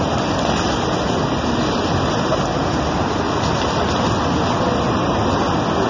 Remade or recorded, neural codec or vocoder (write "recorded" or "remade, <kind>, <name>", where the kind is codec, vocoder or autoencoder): recorded